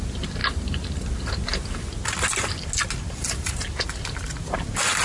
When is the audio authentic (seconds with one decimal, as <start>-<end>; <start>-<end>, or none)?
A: 0.0-5.0